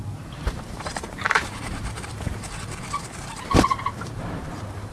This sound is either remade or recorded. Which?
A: remade